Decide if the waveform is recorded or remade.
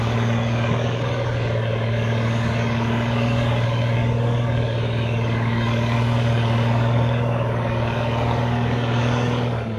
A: remade